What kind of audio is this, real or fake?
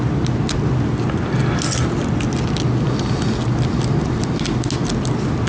real